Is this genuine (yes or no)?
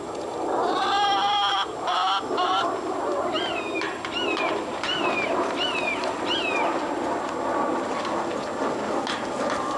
yes